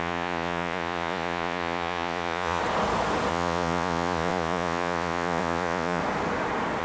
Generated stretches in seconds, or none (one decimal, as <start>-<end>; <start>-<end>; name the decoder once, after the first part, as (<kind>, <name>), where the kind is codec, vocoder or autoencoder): 0.0-2.6 (vocoder, Vocos); 3.3-6.0